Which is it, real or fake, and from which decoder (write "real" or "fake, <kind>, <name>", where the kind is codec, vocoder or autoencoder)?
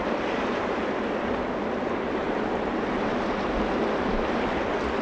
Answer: real